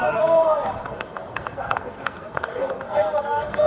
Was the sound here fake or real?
fake